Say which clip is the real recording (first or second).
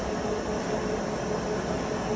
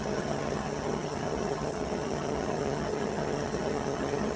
first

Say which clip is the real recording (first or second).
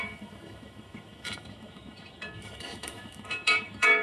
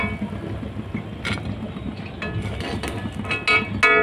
second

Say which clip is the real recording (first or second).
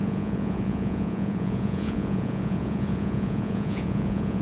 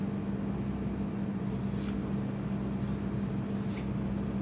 second